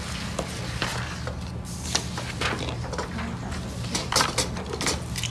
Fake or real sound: real